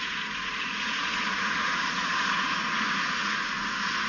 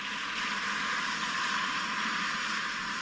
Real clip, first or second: second